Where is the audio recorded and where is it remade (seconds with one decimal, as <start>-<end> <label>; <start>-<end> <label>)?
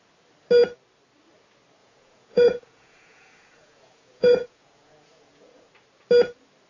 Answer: 0.0-1.8 recorded; 1.8-5.7 remade; 5.7-6.7 recorded